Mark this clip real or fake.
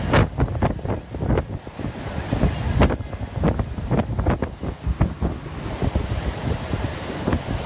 real